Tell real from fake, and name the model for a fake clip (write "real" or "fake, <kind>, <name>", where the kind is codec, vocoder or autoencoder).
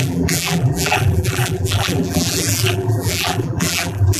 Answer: fake, vocoder, BigVGAN v2